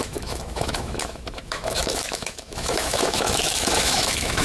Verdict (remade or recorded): remade